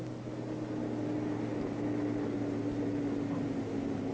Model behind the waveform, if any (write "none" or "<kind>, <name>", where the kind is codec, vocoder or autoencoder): none